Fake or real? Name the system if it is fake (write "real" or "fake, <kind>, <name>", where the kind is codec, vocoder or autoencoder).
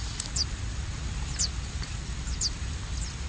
real